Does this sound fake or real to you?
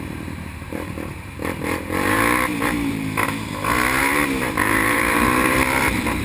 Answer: fake